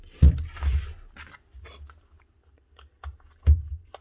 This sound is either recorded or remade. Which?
recorded